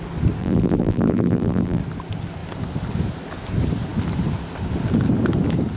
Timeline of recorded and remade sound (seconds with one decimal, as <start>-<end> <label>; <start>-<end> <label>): 0.0-0.4 recorded; 0.4-1.8 remade; 1.8-5.8 recorded